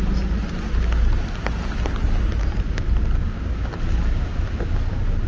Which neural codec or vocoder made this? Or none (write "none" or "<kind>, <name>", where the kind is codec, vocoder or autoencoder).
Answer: none